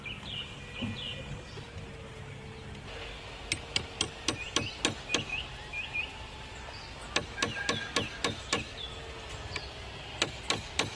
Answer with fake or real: real